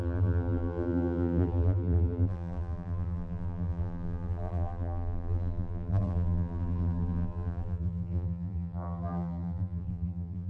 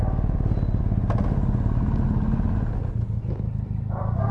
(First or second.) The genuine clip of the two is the second